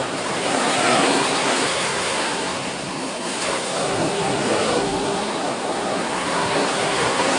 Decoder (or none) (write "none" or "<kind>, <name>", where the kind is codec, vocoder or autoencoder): codec, SNAC